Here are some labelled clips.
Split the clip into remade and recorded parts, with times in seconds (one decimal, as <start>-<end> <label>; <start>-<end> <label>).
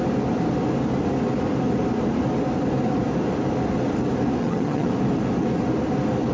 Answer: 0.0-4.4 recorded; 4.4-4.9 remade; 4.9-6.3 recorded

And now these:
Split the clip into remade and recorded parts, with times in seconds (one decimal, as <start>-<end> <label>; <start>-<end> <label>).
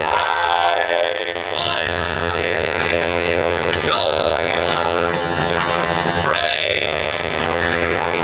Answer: 0.0-8.2 remade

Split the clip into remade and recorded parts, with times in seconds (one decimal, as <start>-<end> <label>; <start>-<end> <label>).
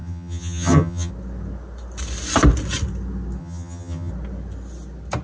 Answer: 0.0-1.1 remade; 1.1-3.4 recorded; 3.4-4.1 remade; 4.1-5.2 recorded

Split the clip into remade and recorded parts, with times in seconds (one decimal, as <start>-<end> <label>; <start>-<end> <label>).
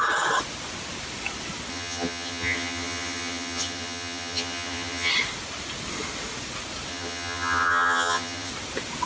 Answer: 0.0-1.7 recorded; 1.7-5.1 remade; 5.1-6.9 recorded; 6.9-8.5 remade; 8.5-9.1 recorded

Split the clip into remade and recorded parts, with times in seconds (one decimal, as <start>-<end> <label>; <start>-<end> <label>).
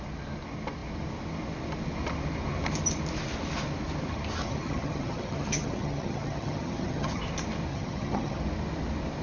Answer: 0.0-4.4 recorded; 4.4-7.2 remade; 7.2-7.7 recorded; 7.7-8.4 remade; 8.4-9.2 recorded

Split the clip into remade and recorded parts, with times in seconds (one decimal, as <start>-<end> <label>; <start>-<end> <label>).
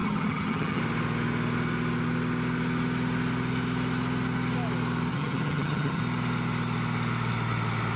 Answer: 0.0-0.8 remade; 0.8-5.1 recorded; 5.1-6.0 remade; 6.0-8.0 recorded